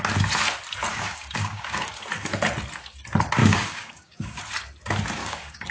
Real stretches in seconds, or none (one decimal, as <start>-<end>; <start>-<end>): 0.0-0.9; 1.9-3.4; 4.4-5.2